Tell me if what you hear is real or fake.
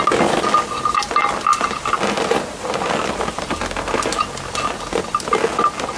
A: real